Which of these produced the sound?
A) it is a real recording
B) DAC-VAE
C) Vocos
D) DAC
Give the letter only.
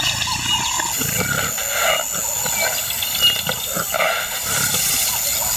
A